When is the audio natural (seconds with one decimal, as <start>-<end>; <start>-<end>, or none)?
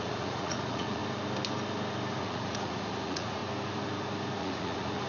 1.0-2.2; 3.4-4.4